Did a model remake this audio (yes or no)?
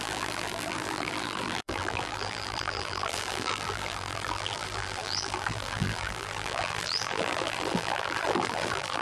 yes